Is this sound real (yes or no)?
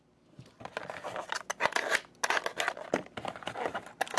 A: yes